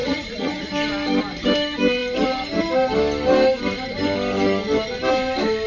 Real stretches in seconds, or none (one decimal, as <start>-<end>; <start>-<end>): 0.7-5.7